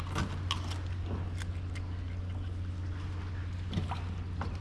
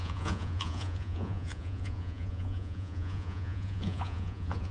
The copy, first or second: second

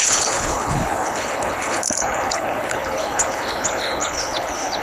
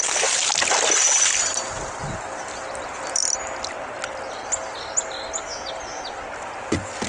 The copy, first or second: first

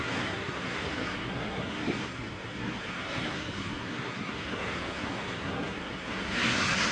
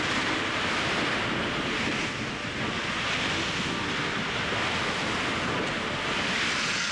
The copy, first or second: first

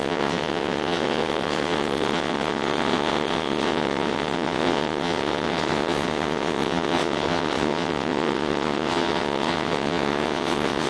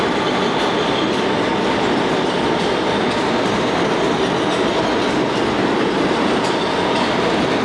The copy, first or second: first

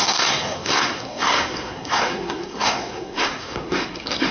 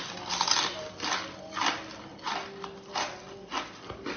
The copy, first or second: first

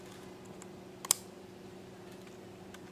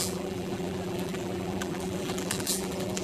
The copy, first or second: second